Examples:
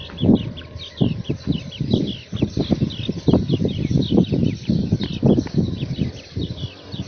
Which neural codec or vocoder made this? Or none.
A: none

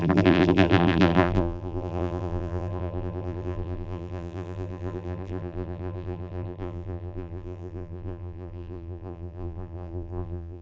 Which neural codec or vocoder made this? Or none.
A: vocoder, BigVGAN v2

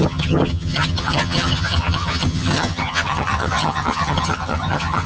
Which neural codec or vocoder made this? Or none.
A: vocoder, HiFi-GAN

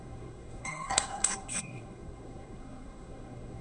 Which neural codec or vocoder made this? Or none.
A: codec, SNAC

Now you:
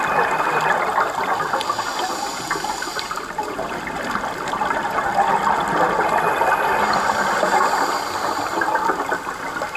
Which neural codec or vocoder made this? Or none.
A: none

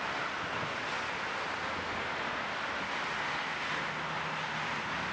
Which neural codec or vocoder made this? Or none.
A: none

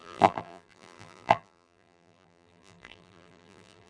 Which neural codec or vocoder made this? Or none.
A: vocoder, BigVGAN v2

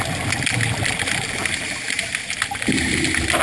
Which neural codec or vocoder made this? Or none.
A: none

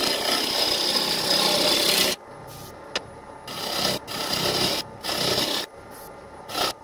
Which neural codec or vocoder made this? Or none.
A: none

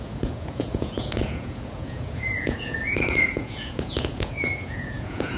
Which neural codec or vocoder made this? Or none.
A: vocoder, Vocos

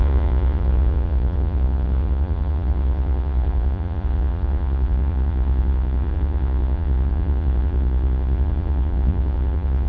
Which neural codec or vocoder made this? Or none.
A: vocoder, Vocos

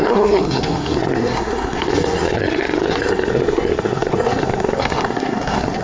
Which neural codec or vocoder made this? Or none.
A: codec, SNAC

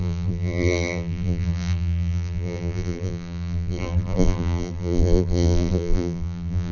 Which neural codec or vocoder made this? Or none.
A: vocoder, BigVGAN v2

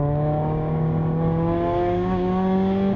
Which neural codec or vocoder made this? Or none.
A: codec, DAC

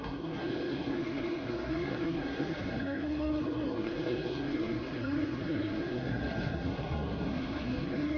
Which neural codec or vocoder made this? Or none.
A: codec, SNAC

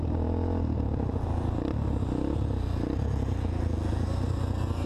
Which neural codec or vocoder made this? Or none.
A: none